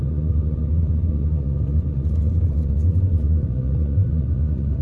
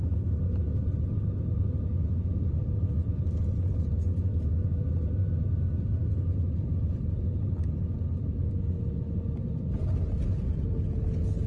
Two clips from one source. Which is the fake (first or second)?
first